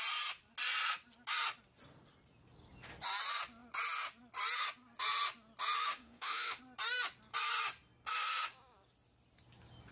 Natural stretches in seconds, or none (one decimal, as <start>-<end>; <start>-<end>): 0.0-5.9; 6.6-9.9